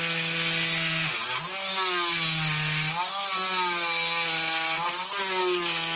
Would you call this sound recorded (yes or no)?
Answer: yes